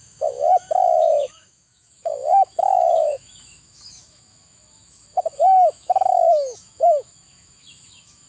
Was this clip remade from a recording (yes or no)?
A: yes